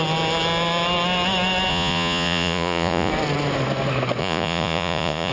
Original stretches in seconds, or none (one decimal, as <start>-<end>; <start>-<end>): 0.0-1.7; 3.1-4.2